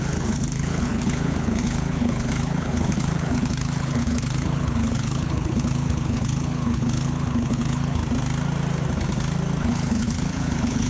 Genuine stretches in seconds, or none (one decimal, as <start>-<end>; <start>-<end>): 8.0-9.6